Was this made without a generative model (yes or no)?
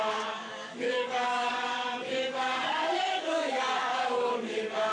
no